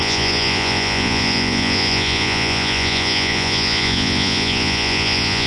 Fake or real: fake